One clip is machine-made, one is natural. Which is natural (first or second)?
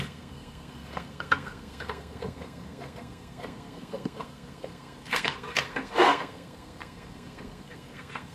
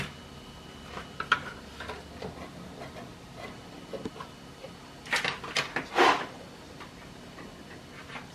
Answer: second